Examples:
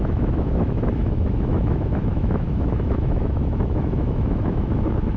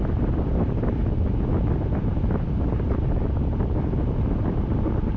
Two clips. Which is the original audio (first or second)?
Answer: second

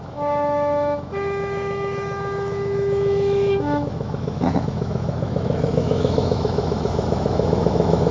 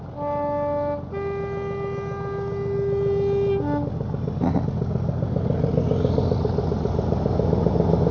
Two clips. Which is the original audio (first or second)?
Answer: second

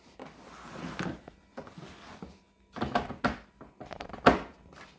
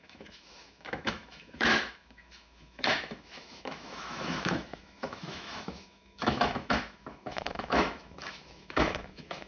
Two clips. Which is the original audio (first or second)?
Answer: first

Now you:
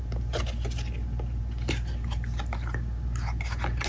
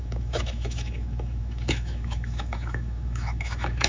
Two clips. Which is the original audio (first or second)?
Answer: first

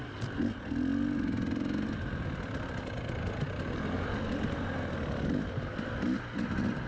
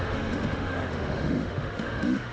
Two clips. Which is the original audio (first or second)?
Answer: first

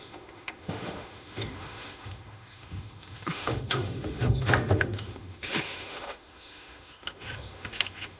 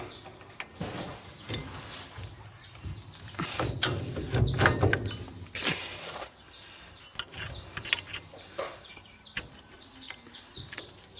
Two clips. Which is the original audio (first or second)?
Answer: second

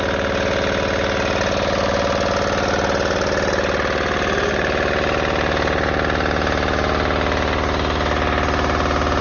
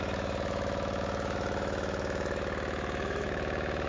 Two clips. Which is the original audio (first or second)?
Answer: first